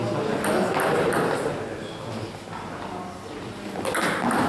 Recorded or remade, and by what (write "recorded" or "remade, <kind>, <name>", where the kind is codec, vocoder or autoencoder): recorded